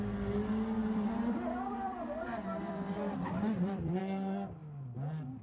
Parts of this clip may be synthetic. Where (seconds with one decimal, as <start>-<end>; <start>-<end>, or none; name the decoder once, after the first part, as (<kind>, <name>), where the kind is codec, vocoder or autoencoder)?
0.8-4.0 (vocoder, BigVGAN v2)